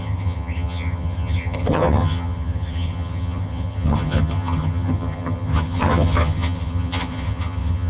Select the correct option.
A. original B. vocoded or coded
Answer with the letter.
B